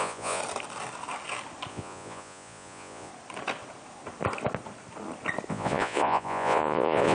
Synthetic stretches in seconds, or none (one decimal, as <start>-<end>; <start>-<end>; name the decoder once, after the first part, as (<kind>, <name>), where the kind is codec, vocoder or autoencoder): 0.0-0.4 (vocoder, Vocos); 1.7-3.1; 5.5-7.1